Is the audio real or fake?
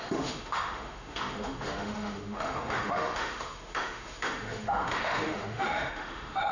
fake